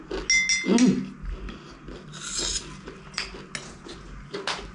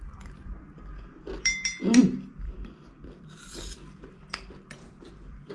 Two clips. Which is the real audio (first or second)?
first